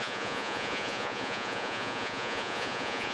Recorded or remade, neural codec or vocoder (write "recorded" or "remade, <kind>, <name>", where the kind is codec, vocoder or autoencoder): remade, vocoder, Vocos